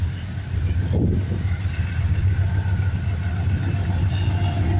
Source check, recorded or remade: recorded